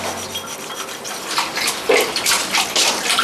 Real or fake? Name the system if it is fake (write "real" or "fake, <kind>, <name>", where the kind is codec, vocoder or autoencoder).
real